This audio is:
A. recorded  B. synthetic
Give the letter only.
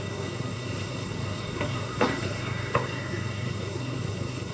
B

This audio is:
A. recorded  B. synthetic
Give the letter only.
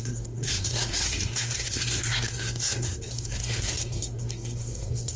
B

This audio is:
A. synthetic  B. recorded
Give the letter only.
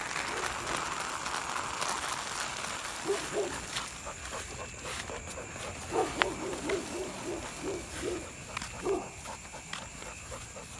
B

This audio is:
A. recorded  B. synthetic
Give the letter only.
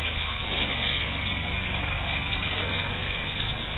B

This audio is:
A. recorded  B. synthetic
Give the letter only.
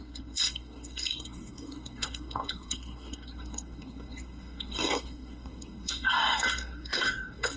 B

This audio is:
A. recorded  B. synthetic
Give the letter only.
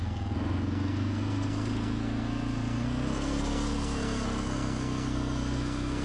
B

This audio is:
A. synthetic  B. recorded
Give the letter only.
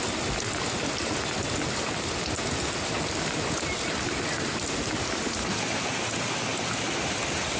B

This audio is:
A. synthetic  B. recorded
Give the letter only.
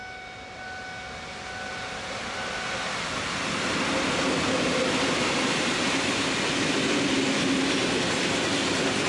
B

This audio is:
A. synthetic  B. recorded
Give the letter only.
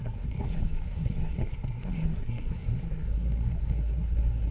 A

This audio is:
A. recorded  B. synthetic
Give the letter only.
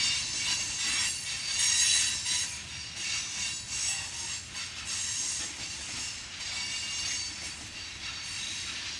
A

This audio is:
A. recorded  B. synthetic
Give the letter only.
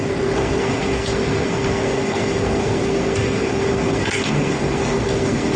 B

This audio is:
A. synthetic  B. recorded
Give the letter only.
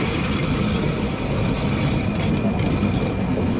B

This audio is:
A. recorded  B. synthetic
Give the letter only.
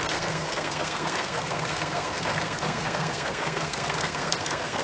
B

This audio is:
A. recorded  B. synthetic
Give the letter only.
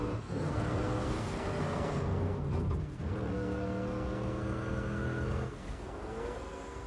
B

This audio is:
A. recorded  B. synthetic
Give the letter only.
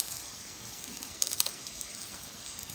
B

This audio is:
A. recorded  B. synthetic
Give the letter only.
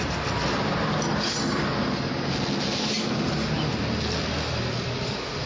A